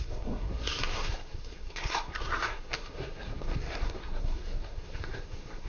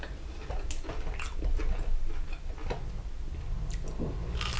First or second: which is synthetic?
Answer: first